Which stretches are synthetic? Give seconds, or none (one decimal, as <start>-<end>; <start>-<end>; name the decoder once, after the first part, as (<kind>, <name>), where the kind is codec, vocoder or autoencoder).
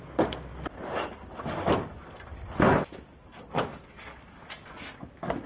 none